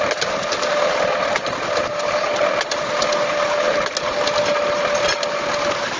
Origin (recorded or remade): recorded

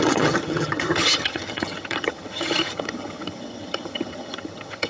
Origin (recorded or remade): remade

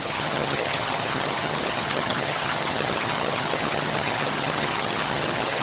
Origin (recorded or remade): remade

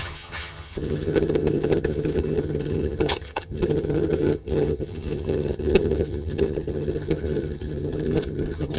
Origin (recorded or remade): remade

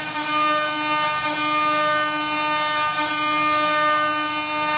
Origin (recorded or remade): recorded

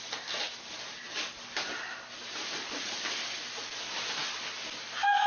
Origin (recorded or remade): recorded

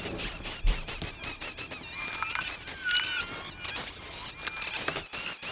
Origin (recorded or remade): recorded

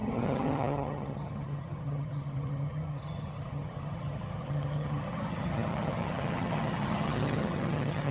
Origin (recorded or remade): remade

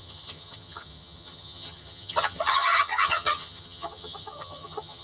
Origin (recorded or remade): remade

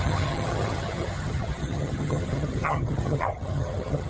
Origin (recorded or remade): remade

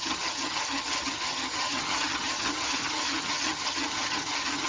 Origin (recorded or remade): remade